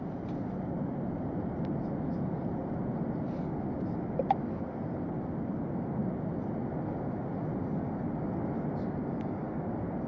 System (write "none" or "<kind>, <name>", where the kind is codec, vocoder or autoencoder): none